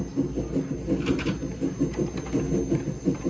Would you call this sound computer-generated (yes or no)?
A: no